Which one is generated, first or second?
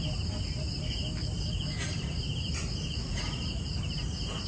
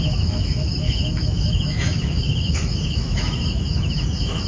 second